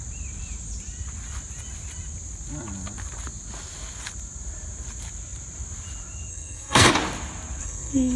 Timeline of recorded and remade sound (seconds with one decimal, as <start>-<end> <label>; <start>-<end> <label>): 0.0-6.3 recorded; 6.3-6.9 remade; 6.9-7.6 recorded; 7.6-8.2 remade